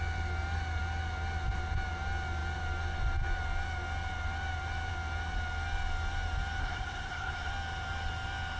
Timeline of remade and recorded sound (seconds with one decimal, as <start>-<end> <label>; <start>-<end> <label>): 0.0-6.6 recorded; 6.6-7.5 remade; 7.5-8.6 recorded